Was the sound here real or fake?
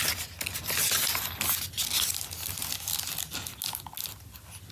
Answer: real